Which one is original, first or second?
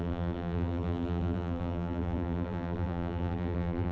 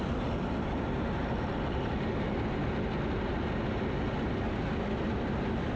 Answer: second